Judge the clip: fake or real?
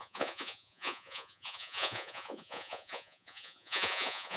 fake